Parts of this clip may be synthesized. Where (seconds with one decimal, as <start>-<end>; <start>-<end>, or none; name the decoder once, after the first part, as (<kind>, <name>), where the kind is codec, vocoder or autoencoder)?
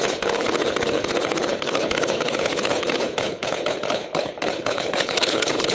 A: 0.0-5.7 (codec, HILCodec)